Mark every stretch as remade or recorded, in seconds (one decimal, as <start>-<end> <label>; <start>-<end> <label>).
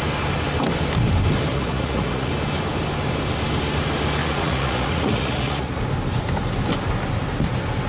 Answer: 0.0-1.5 recorded; 1.5-2.3 remade; 2.3-4.2 recorded; 4.2-5.8 remade; 5.8-7.9 recorded